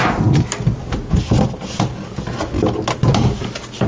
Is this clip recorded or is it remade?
recorded